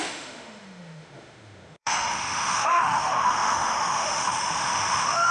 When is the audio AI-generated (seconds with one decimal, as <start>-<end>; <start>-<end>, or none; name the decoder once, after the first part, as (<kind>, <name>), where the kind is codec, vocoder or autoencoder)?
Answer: 0.0-5.3 (autoencoder, DAC-VAE)